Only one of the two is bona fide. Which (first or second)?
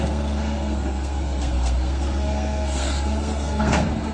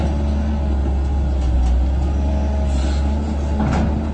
second